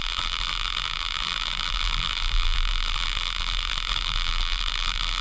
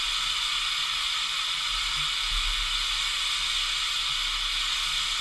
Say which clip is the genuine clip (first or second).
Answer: second